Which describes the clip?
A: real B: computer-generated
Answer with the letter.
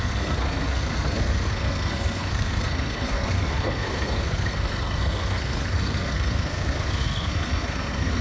B